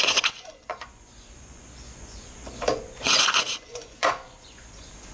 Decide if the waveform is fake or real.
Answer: fake